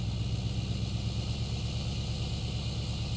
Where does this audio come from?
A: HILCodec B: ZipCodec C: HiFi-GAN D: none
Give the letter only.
D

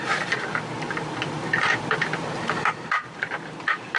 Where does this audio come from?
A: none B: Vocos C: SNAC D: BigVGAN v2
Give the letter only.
D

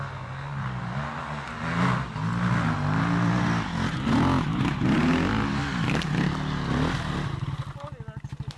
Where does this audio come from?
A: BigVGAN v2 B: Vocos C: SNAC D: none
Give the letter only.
D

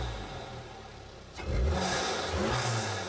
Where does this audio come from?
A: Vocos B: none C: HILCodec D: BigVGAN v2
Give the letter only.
B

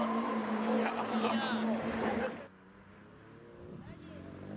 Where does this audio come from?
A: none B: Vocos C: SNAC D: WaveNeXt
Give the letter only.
A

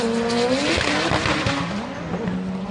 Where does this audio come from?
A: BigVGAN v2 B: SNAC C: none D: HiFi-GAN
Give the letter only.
C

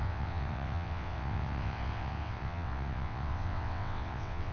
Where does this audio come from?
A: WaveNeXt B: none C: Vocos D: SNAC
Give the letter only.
A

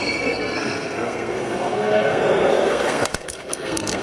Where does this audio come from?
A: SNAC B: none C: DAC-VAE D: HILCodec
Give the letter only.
A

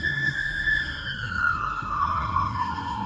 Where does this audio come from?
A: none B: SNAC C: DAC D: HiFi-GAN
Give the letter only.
B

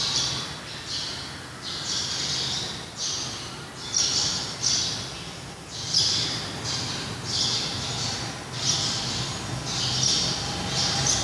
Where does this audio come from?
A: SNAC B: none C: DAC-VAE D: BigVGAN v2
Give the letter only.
B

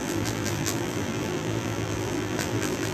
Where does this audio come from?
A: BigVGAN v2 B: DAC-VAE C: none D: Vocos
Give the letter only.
A